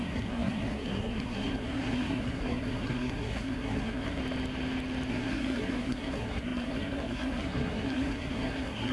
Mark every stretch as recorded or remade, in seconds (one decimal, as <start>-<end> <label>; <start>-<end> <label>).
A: 0.0-4.2 remade; 4.2-5.1 recorded; 5.1-8.9 remade